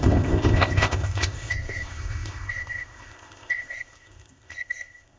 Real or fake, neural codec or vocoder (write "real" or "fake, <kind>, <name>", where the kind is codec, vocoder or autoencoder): fake, codec, ZipCodec